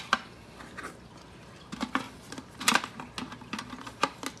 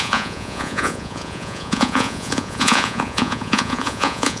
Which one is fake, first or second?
second